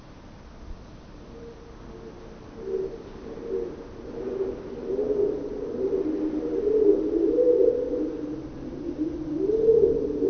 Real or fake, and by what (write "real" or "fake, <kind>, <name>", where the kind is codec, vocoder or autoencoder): real